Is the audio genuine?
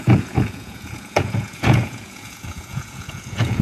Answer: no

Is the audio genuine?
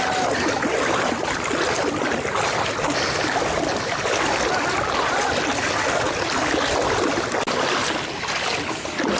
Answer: yes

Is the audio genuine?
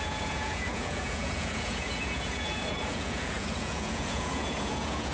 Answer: no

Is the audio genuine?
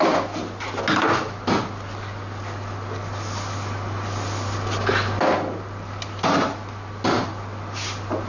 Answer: yes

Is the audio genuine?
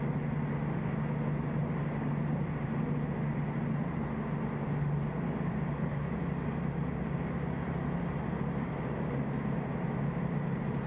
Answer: yes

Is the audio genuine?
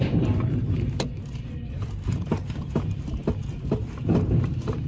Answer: yes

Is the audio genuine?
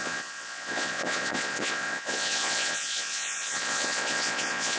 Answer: no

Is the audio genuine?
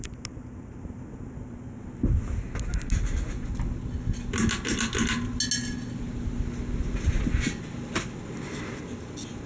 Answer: yes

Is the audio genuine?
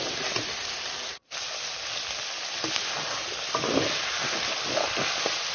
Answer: yes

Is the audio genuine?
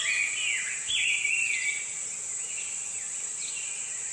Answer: yes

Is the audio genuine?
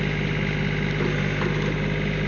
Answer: yes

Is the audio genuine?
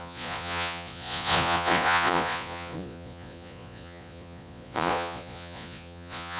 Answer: no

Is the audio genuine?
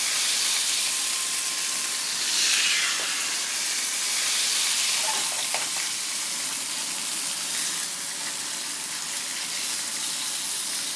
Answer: yes